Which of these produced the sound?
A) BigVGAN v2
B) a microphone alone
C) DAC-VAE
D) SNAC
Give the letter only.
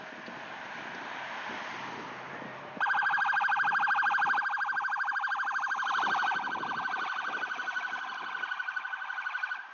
A